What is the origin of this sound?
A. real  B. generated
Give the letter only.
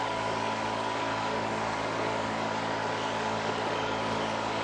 B